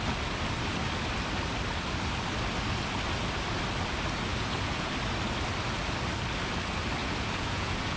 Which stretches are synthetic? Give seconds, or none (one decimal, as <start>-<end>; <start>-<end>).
4.3-4.9; 7.0-8.0